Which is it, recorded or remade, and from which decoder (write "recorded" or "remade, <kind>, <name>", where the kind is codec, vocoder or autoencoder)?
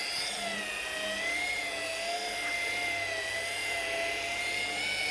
recorded